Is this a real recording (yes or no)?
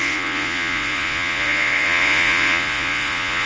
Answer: no